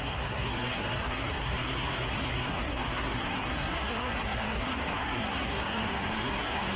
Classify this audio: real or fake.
fake